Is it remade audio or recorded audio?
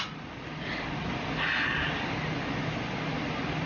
recorded